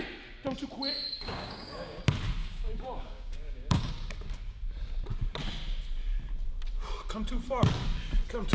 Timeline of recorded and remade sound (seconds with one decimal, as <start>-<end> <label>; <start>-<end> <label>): 0.0-1.1 recorded; 1.1-2.0 remade; 2.0-2.4 recorded; 2.4-3.9 remade; 3.9-8.5 recorded